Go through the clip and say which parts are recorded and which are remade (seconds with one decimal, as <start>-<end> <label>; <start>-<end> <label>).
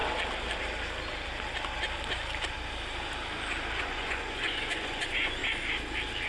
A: 0.0-3.8 recorded; 3.8-5.4 remade; 5.4-6.3 recorded